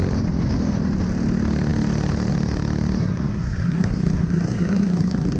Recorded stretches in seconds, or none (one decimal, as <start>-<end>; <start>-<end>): 0.0-3.0